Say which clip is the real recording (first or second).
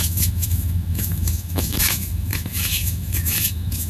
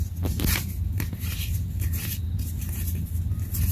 second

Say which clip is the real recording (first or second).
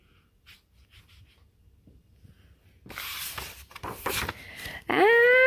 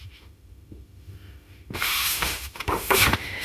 first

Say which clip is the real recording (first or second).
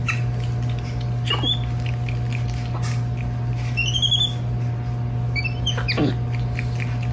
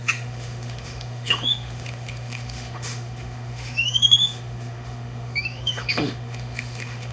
first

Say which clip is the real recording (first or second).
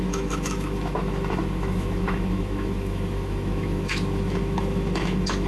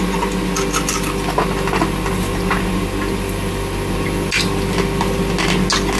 second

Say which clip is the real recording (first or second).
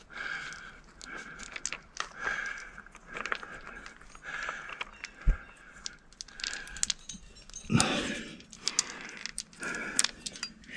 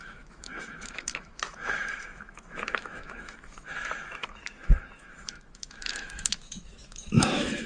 first